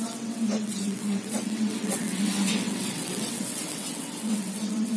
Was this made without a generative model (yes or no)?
no